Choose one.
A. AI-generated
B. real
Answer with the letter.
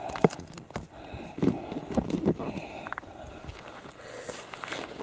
B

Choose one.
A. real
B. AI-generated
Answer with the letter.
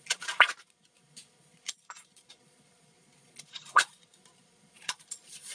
B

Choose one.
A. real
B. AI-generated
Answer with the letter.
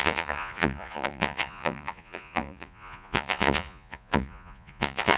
B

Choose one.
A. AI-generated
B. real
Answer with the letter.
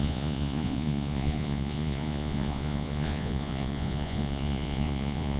A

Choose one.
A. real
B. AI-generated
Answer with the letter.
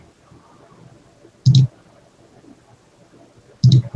A